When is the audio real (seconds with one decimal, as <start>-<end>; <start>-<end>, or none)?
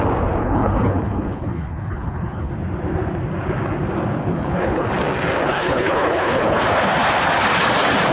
0.0-0.4; 2.5-4.3; 4.9-5.5; 6.6-8.1